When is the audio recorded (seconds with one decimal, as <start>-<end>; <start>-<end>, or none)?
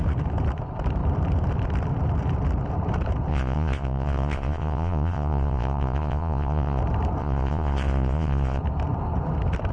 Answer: 0.0-3.3; 6.8-7.2; 8.6-9.7